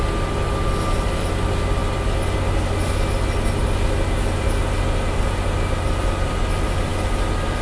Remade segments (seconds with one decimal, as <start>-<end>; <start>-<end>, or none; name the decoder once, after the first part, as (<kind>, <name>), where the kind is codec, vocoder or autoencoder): none